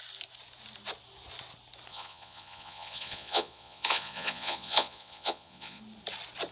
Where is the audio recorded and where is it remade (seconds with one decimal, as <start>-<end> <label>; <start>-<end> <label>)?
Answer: 0.0-1.9 recorded; 1.9-5.8 remade; 5.8-6.5 recorded